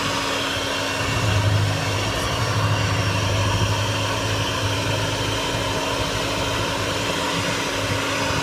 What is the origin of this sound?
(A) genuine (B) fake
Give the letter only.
A